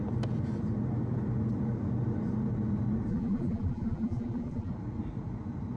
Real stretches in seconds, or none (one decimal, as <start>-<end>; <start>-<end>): 0.0-3.1; 4.7-5.8